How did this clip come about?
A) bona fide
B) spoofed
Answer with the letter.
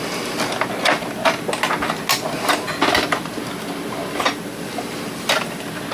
A